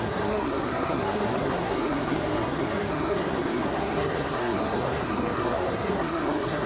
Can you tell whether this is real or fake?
fake